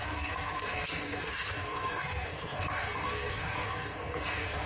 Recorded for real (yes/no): no